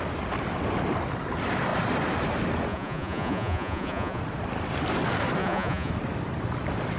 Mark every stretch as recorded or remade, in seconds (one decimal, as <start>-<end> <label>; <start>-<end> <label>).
0.0-2.7 recorded; 2.7-4.2 remade; 4.2-5.4 recorded; 5.4-5.9 remade; 5.9-7.0 recorded

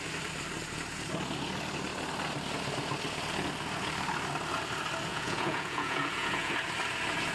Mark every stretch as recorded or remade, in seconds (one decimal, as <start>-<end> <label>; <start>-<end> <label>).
0.0-5.1 recorded; 5.1-6.5 remade; 6.5-7.3 recorded

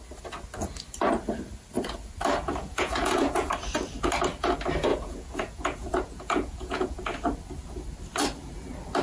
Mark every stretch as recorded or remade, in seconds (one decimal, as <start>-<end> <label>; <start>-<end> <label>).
0.0-2.6 recorded; 2.6-3.5 remade; 3.5-4.9 recorded; 4.9-7.0 remade; 7.0-9.0 recorded